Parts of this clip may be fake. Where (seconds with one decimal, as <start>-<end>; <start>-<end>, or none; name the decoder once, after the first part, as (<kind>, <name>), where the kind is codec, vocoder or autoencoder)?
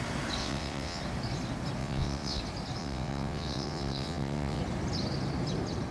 0.4-1.0 (vocoder, WaveNeXt); 1.8-2.4; 2.8-4.6